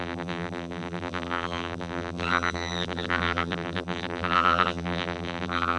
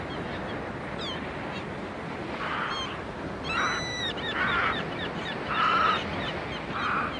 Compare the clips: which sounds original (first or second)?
second